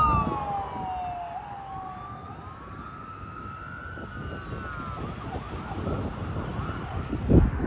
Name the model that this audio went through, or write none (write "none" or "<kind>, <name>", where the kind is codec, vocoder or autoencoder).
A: none